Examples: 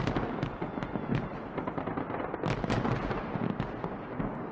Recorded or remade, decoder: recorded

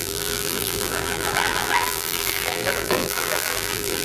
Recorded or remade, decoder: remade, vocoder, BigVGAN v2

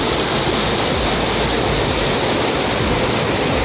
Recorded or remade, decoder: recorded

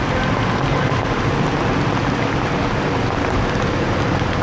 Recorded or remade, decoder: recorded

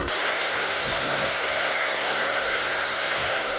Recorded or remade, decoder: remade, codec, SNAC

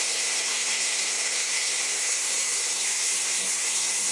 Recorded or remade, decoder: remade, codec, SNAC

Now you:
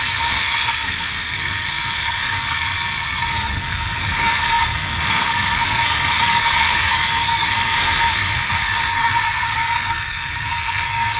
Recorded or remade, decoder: remade, codec, SNAC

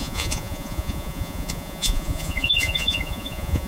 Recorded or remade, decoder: remade, vocoder, Vocos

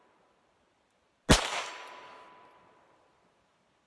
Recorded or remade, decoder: recorded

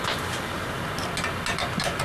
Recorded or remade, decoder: recorded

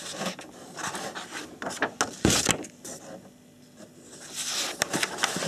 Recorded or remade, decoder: recorded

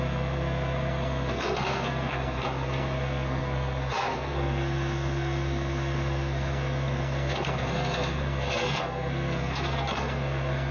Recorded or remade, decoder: remade, codec, SNAC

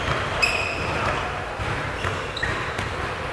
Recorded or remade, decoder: remade, vocoder, BigVGAN v2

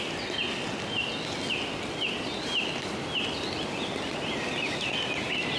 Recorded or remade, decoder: recorded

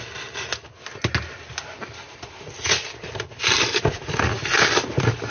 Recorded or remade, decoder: recorded